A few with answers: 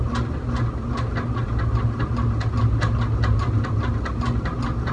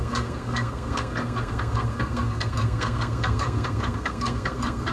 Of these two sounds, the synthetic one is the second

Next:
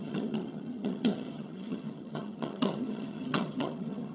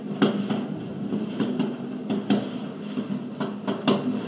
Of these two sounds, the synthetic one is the first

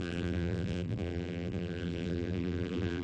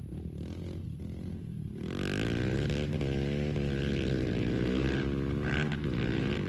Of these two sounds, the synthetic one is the first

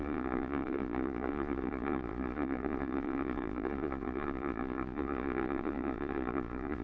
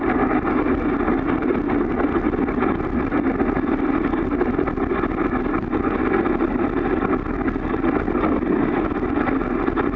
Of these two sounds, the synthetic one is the first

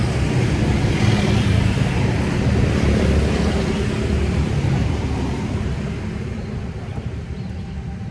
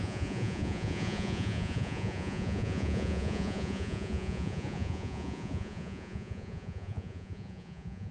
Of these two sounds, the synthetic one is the second